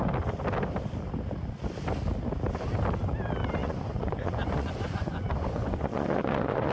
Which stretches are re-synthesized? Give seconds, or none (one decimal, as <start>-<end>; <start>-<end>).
3.6-6.7